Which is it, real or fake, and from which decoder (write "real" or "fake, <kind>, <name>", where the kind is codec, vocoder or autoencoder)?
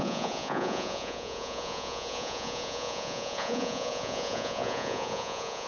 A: fake, vocoder, Vocos